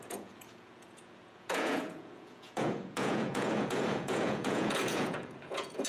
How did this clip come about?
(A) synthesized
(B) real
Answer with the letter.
A